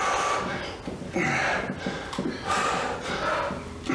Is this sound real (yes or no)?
yes